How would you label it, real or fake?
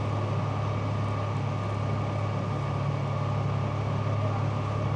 real